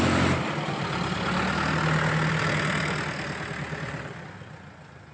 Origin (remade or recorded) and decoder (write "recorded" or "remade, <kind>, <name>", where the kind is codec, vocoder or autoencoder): recorded